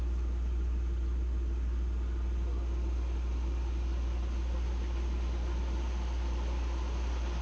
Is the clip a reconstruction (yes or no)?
no